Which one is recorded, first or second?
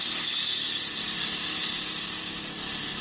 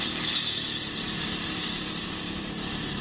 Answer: first